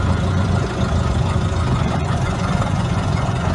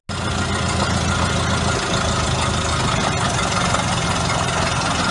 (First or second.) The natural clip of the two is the second